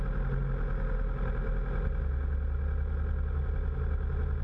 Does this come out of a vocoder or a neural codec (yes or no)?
no